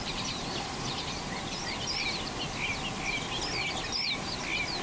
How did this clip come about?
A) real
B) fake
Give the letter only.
A